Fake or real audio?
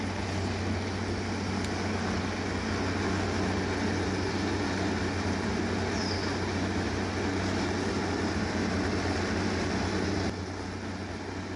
real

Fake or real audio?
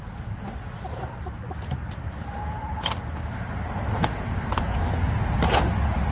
real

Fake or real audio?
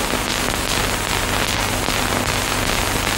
real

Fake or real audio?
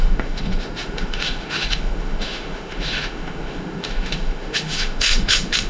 fake